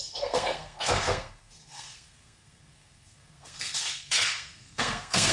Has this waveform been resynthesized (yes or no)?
yes